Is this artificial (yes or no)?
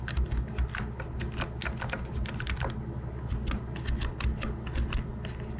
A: no